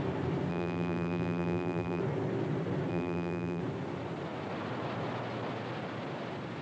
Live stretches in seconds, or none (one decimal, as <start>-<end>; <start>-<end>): 0.0-0.5; 2.0-2.9; 3.6-6.6